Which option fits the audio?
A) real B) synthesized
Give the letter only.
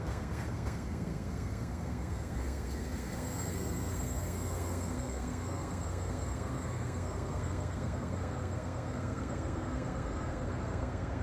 B